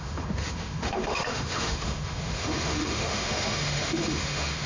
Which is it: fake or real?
fake